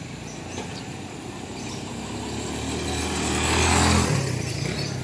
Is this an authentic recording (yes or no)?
yes